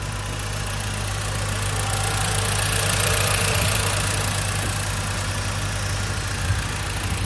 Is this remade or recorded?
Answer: recorded